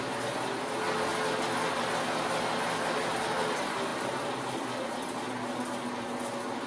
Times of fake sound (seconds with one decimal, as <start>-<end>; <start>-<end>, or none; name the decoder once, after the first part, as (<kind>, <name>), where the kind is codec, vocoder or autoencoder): none